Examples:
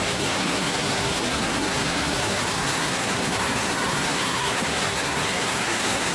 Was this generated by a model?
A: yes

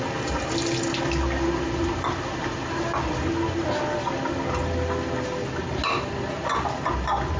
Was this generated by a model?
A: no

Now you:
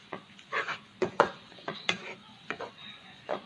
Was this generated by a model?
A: yes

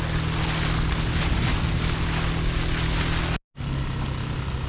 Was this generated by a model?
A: no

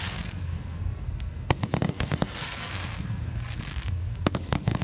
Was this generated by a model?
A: yes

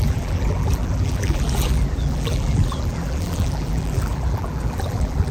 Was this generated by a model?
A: yes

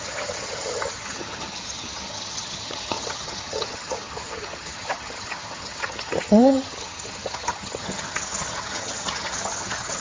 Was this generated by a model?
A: yes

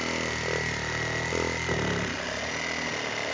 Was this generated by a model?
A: no